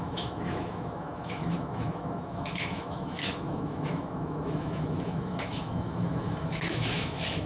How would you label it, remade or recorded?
remade